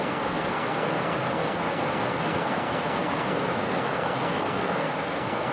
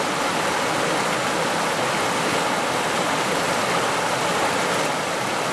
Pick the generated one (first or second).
first